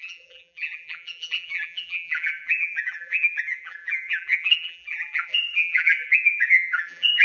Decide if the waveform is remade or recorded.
remade